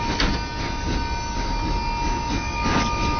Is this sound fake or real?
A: real